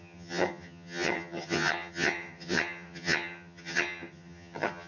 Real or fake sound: fake